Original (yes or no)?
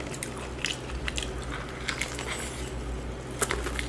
yes